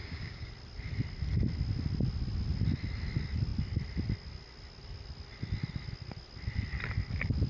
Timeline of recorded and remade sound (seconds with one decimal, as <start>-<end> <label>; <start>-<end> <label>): 0.0-0.5 remade; 0.5-7.5 recorded